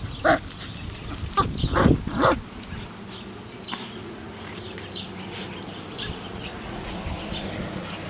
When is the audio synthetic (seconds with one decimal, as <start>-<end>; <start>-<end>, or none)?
4.0-4.8; 6.3-6.9